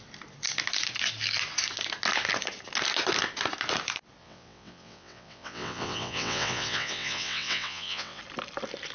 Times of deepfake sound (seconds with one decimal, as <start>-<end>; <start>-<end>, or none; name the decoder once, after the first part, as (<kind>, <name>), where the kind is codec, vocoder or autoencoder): 4.2-8.2 (vocoder, WaveNeXt)